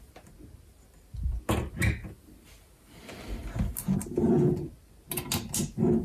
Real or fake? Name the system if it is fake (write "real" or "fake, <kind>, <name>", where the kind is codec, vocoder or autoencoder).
real